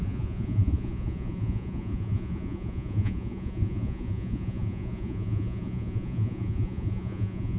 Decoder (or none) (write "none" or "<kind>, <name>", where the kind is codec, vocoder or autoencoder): vocoder, Vocos